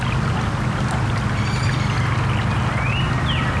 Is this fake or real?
real